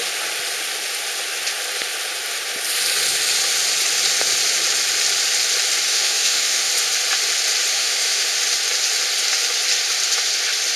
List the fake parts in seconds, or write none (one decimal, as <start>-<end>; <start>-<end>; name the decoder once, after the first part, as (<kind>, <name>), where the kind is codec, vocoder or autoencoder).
5.9-6.7 (autoencoder, DAC-VAE); 7.7-8.3